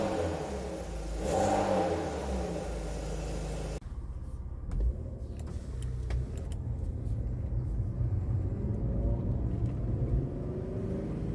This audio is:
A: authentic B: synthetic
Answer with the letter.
A